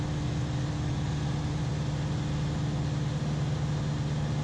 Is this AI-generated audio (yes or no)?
no